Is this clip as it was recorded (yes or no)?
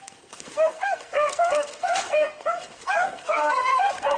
no